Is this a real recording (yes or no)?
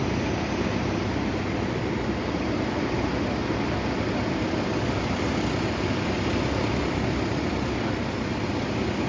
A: yes